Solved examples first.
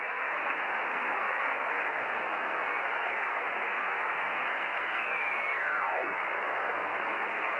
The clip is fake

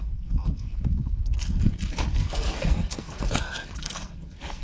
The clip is fake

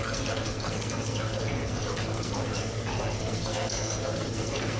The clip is fake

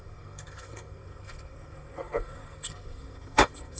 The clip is fake